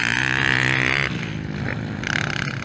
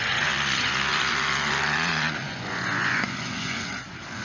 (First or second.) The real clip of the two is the first